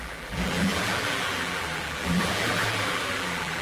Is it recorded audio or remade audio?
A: remade